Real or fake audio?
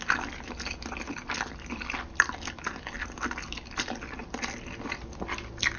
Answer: real